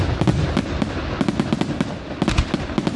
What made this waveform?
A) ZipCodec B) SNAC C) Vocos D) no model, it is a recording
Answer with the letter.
D